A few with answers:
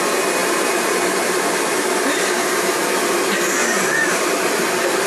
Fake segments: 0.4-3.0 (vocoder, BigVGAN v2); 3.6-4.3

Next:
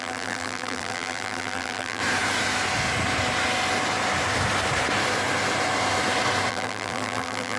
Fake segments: 0.0-2.0 (vocoder, BigVGAN v2); 6.5-7.6

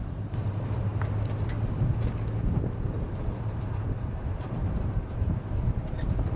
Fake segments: 0.0-0.9 (vocoder, BigVGAN v2); 1.5-6.4